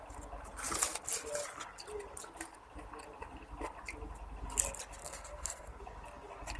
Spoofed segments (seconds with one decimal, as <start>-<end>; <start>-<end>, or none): 5.0-5.8